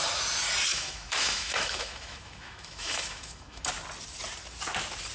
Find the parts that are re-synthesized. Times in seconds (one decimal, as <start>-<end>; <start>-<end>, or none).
0.7-3.6